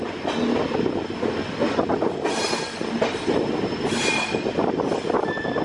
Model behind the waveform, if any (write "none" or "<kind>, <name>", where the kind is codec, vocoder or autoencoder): none